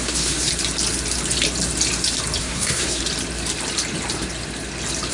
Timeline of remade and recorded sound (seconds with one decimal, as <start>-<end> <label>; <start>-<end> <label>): 0.0-0.5 remade; 0.5-2.4 recorded; 2.4-3.0 remade; 3.0-5.1 recorded